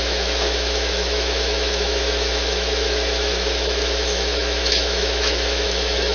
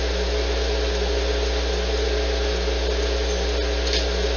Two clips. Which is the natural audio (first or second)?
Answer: second